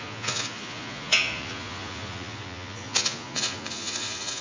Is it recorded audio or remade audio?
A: remade